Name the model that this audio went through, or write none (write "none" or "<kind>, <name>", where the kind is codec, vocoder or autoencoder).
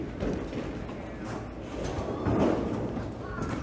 none